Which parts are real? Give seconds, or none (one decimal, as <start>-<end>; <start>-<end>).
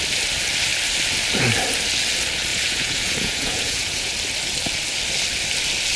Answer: 0.0-2.5; 4.1-6.0